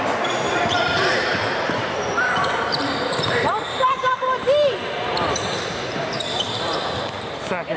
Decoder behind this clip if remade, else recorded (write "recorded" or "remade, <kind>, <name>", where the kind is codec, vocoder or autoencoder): remade, vocoder, BigVGAN v2